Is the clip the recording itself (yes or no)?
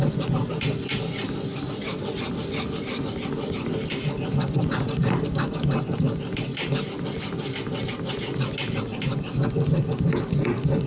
yes